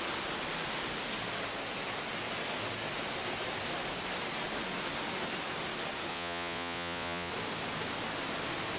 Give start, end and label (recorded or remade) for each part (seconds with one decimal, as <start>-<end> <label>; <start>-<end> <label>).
0.0-6.1 recorded; 6.1-7.3 remade; 7.3-8.8 recorded